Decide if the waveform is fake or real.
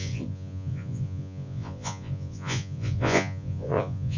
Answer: fake